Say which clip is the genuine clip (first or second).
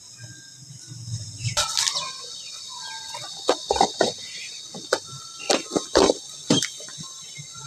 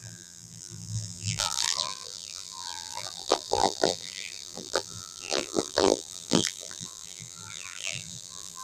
first